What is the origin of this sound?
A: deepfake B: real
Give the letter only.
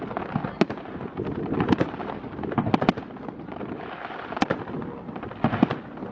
B